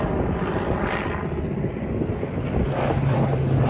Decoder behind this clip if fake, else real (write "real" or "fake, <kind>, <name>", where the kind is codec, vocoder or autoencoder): real